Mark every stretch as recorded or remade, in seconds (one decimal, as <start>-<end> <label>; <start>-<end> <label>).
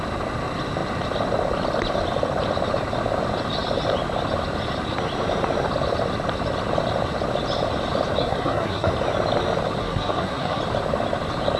0.0-8.2 recorded; 8.2-8.9 remade; 8.9-9.8 recorded; 9.8-10.6 remade; 10.6-11.6 recorded